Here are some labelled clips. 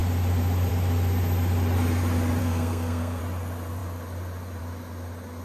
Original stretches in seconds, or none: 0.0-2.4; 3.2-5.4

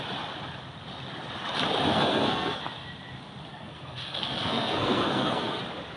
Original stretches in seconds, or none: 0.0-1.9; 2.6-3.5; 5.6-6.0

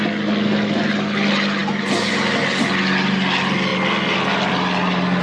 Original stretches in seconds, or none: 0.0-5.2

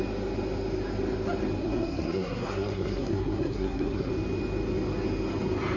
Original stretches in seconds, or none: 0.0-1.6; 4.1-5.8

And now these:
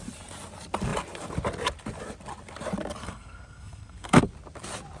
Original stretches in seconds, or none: 0.0-3.0; 4.2-5.0